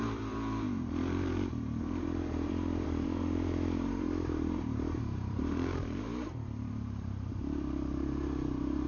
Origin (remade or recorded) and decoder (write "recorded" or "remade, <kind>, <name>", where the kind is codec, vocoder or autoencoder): remade, vocoder, BigVGAN v2